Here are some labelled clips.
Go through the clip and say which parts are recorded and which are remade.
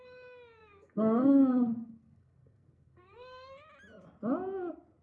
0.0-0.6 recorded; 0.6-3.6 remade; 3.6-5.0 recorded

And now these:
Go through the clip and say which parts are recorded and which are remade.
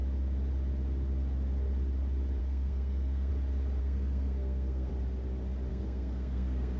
0.0-2.4 recorded; 2.4-3.3 remade; 3.3-3.8 recorded; 3.8-4.9 remade; 4.9-5.7 recorded; 5.7-6.8 remade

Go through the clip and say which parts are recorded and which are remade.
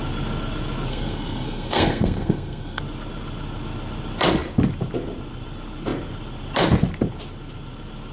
0.0-0.9 recorded; 0.9-2.8 remade; 2.8-8.1 recorded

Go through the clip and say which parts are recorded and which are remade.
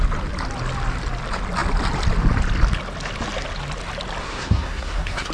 0.0-4.2 recorded; 4.2-5.3 remade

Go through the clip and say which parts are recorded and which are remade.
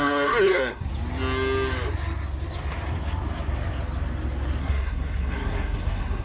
0.0-0.9 remade; 0.9-4.6 recorded; 4.6-6.2 remade